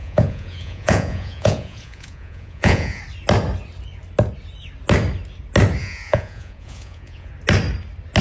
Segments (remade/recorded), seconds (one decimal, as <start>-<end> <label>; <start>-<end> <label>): 0.0-3.0 remade; 3.0-5.8 recorded; 5.8-7.3 remade; 7.3-8.2 recorded